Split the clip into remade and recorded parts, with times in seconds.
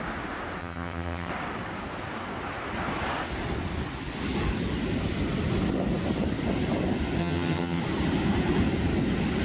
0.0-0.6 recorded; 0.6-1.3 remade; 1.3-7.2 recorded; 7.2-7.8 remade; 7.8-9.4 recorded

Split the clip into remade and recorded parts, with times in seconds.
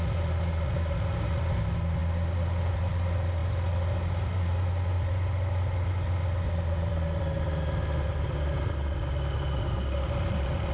0.0-10.7 recorded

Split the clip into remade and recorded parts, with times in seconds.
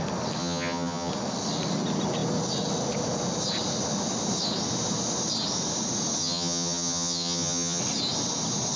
0.0-0.4 recorded; 0.4-1.1 remade; 1.1-6.2 recorded; 6.2-7.8 remade; 7.8-8.8 recorded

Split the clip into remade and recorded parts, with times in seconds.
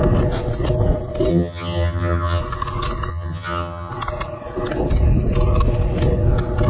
0.0-1.3 recorded; 1.3-2.4 remade; 2.4-3.1 recorded; 3.1-3.9 remade; 3.9-6.7 recorded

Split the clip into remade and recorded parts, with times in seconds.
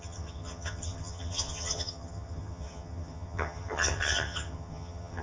0.0-5.2 remade